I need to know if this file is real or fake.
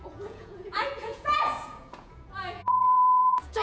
fake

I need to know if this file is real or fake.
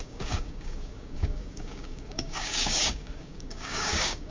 fake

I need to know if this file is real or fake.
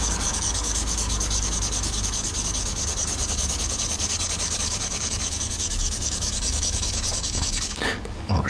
fake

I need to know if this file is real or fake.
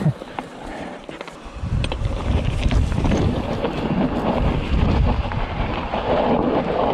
fake